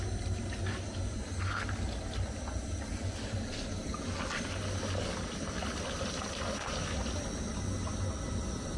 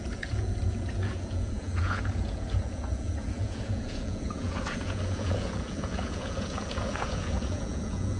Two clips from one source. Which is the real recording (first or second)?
first